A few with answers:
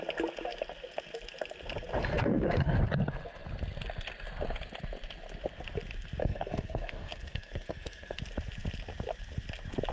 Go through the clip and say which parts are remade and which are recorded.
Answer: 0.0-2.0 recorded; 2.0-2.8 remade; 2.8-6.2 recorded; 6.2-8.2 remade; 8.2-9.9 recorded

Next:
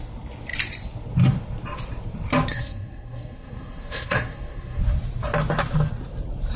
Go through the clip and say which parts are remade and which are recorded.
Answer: 0.0-2.5 recorded; 2.5-4.8 remade; 4.8-6.6 recorded

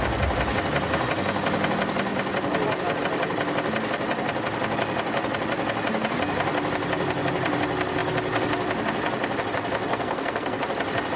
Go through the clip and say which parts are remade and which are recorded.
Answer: 0.0-9.9 recorded; 9.9-10.6 remade; 10.6-11.2 recorded

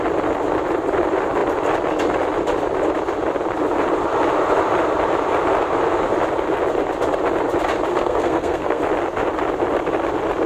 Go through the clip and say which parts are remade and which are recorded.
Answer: 0.0-7.9 recorded; 7.9-8.8 remade; 8.8-10.5 recorded

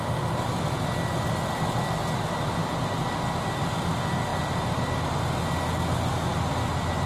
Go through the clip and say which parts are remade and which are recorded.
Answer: 0.0-7.1 recorded

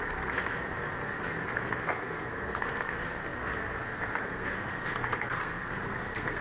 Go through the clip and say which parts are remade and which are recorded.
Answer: 0.0-6.4 remade